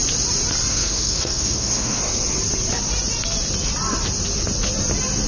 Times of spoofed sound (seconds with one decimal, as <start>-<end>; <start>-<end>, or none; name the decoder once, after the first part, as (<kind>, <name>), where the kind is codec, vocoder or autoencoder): 0.7-2.0 (codec, SNAC)